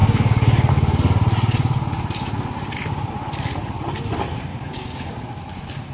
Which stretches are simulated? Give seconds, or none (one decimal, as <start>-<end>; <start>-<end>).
0.0-0.7; 4.5-5.1